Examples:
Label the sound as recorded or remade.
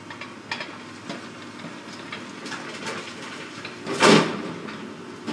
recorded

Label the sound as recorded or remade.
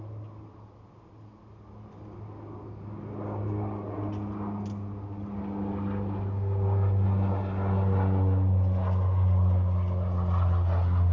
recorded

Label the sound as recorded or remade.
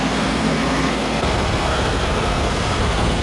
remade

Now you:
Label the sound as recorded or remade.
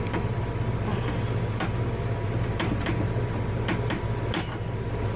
recorded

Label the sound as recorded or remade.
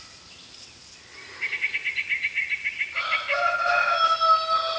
recorded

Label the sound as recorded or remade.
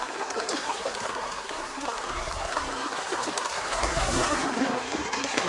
remade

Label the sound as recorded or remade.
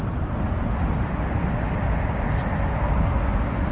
recorded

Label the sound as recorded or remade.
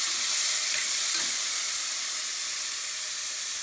recorded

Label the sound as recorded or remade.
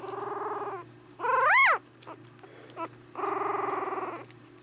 recorded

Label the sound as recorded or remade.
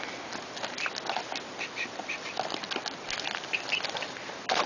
recorded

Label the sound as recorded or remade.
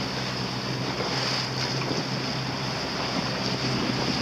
recorded